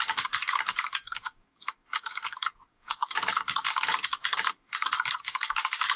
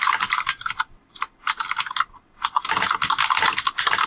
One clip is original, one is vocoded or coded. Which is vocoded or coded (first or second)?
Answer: first